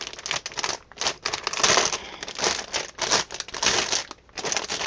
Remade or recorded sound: recorded